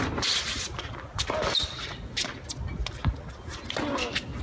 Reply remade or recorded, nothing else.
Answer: recorded